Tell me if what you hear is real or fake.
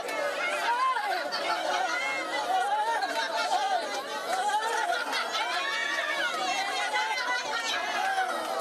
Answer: real